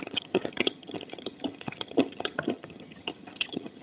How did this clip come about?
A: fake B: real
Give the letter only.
A